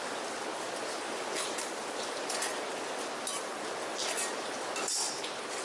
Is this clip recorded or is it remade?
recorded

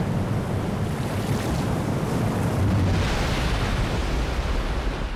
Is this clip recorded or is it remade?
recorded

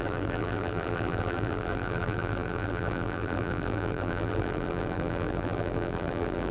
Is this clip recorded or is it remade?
remade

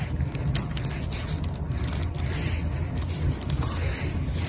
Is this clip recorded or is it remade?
recorded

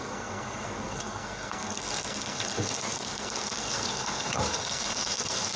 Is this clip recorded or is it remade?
remade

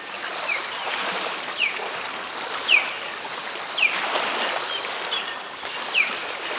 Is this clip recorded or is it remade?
recorded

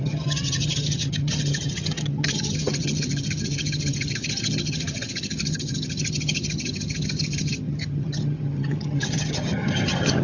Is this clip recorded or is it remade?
remade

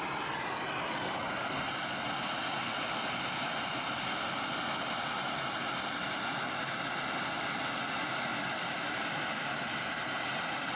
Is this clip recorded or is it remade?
recorded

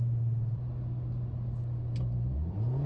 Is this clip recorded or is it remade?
recorded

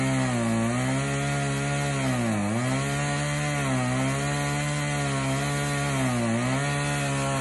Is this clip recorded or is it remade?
recorded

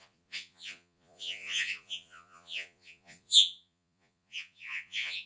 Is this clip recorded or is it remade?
remade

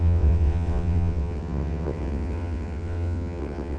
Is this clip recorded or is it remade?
remade